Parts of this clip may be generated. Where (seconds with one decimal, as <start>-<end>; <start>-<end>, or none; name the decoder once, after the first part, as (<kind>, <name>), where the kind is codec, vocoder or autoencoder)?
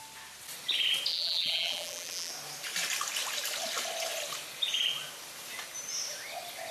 1.1-2.3 (vocoder, BigVGAN v2)